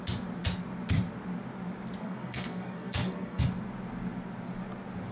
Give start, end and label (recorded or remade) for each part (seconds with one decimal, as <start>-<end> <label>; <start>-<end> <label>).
0.0-2.0 recorded; 2.0-3.4 remade; 3.4-5.1 recorded